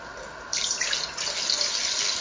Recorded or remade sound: recorded